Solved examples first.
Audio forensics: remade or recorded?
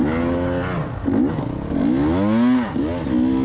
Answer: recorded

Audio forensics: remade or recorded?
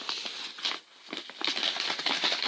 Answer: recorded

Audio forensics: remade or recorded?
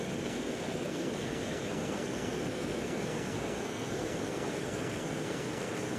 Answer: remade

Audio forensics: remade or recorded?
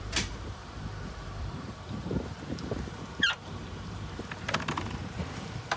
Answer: remade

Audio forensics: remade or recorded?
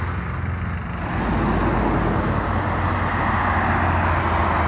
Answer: recorded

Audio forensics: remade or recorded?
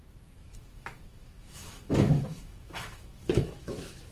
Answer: remade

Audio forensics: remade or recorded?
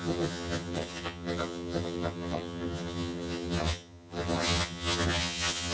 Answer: remade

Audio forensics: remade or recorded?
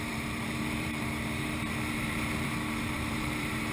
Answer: remade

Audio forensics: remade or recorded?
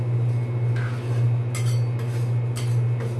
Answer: recorded